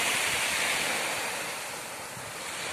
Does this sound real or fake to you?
real